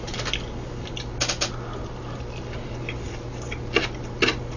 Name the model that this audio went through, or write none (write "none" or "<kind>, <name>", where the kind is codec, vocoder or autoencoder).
none